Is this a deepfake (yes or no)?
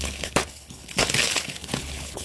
yes